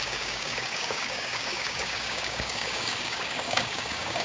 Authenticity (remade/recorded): remade